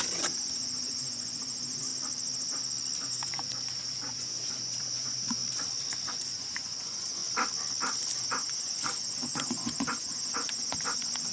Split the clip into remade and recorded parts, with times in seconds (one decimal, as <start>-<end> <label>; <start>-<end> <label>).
0.0-1.9 remade; 1.9-3.0 recorded; 3.0-5.4 remade; 5.4-6.1 recorded; 6.1-7.2 remade; 7.2-8.2 recorded; 8.2-11.3 remade